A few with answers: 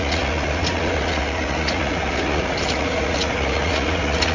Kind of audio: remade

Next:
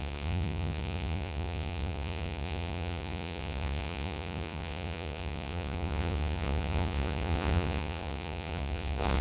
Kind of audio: remade